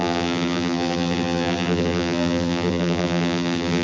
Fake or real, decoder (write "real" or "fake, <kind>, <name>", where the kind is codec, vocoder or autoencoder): fake, vocoder, BigVGAN v2